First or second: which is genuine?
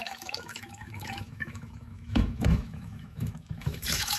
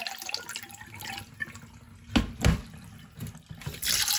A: second